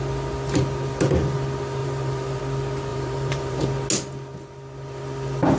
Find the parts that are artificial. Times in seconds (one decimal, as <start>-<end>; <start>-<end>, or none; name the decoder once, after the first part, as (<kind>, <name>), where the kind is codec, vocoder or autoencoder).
1.8-2.4 (vocoder, BigVGAN v2); 2.9-3.7